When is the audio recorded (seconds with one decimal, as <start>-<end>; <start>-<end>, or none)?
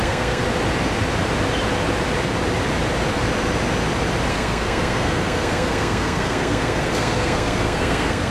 0.4-4.3